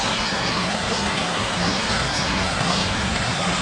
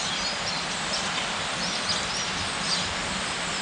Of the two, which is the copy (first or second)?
first